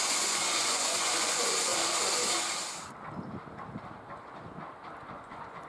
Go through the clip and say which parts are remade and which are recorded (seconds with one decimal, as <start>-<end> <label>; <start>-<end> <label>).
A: 0.0-1.7 remade; 1.7-5.1 recorded; 5.1-5.7 remade